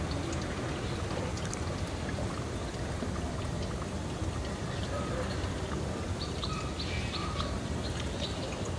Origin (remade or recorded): recorded